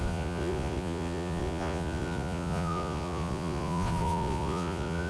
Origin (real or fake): fake